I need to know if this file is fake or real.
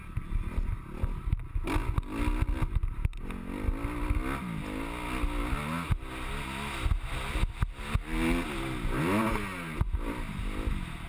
real